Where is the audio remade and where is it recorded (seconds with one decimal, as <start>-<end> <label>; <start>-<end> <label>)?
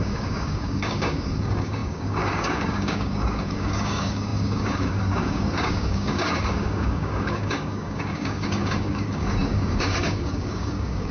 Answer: 0.0-11.1 remade